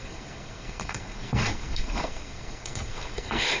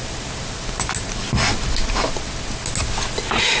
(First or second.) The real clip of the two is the second